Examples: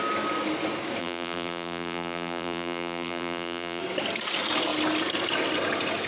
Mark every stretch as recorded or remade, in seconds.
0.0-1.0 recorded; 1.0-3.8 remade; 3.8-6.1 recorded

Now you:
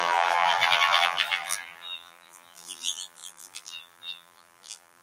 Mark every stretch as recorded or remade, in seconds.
0.0-5.0 remade

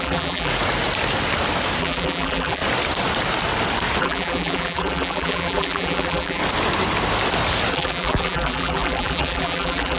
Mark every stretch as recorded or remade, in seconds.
0.0-0.5 remade; 0.5-1.8 recorded; 1.8-2.6 remade; 2.6-4.0 recorded; 4.0-6.4 remade; 6.4-7.7 recorded; 7.7-10.0 remade

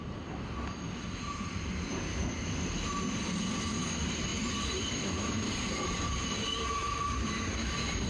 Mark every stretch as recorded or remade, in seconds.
0.0-4.3 recorded; 4.3-8.1 remade